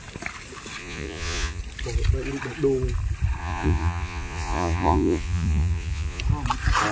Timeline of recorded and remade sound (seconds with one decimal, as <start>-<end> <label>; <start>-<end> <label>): 0.0-0.8 recorded; 0.8-1.6 remade; 1.6-3.4 recorded; 3.4-6.2 remade; 6.2-6.9 recorded